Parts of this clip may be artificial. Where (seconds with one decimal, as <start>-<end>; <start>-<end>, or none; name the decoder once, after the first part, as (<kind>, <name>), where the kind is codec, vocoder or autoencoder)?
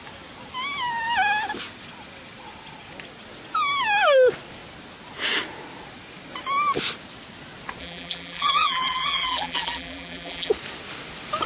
7.8-10.5 (vocoder, BigVGAN v2)